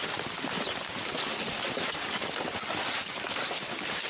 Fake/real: real